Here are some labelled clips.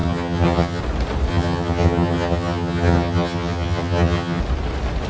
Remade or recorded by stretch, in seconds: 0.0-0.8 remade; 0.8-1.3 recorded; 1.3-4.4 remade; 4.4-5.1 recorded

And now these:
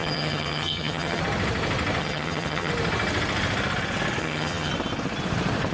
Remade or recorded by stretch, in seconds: 0.0-1.2 remade; 1.2-2.0 recorded; 2.0-2.7 remade; 2.7-4.2 recorded; 4.2-4.7 remade; 4.7-5.7 recorded

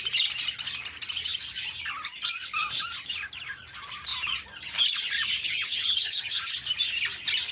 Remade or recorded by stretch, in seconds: 0.0-5.4 recorded; 5.4-6.5 remade; 6.5-7.5 recorded

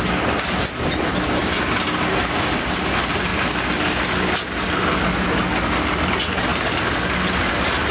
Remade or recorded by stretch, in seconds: 0.0-7.9 recorded

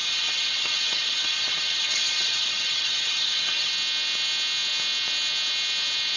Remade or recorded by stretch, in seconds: 0.0-3.7 remade; 3.7-6.2 recorded